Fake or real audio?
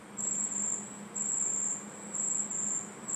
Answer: real